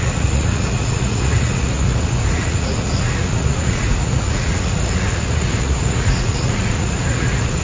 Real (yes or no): no